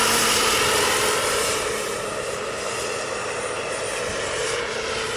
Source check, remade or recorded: remade